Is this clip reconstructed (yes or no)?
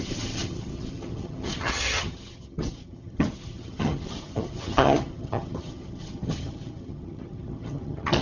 yes